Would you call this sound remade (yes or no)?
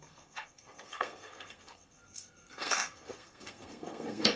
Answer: yes